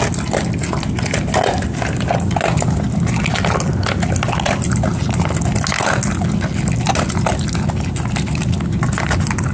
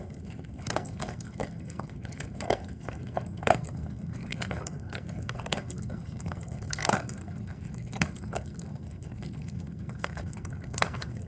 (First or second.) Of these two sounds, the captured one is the first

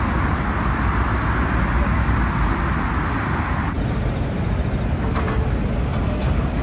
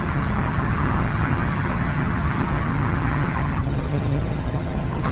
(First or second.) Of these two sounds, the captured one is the first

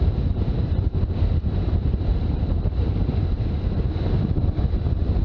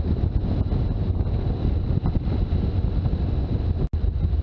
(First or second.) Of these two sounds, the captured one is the second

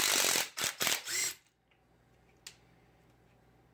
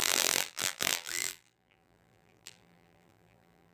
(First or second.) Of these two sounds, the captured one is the first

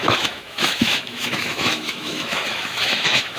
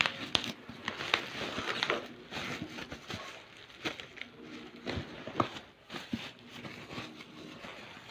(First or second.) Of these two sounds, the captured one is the second